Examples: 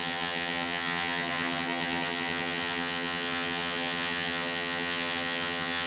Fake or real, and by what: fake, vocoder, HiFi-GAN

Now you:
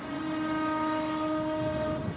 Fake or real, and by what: real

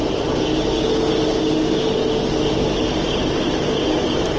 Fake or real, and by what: real